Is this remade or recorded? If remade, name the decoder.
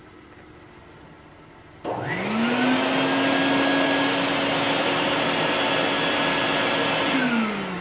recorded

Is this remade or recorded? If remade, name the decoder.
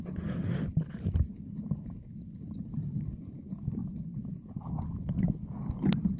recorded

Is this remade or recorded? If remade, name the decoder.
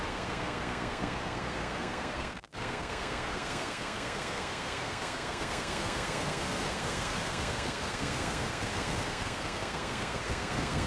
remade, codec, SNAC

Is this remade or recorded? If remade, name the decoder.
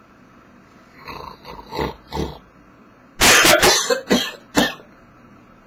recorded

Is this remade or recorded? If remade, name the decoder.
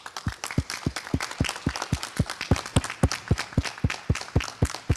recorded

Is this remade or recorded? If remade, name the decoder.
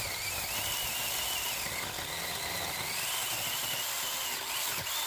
recorded